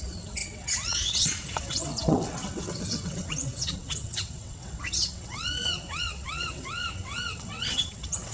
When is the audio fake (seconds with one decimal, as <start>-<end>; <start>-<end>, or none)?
0.0-8.3